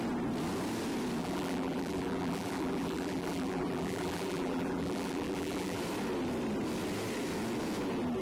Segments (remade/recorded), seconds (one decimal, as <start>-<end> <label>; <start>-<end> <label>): 0.0-1.2 recorded; 1.2-5.8 remade; 5.8-8.2 recorded